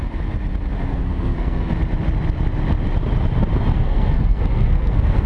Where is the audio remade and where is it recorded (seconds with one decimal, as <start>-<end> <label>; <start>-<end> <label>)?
0.0-0.9 recorded; 0.9-1.7 remade; 1.7-3.7 recorded; 3.7-5.3 remade